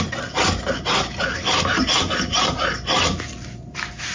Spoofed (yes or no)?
no